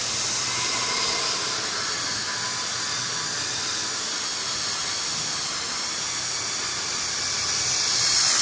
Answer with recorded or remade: recorded